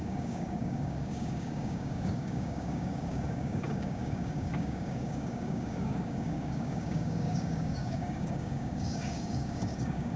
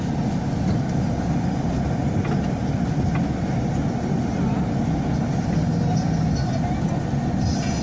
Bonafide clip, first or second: second